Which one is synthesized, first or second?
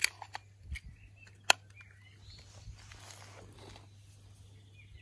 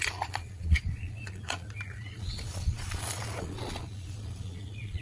second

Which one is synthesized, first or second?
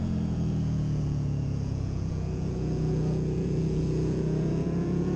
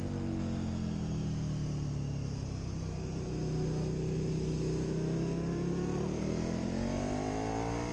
first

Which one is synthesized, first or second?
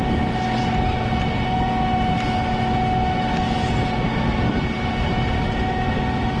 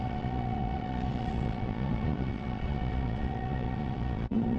second